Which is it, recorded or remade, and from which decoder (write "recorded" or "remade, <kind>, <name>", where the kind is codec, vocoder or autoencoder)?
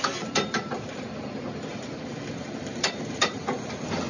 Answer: recorded